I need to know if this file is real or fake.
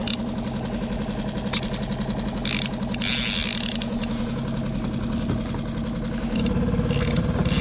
real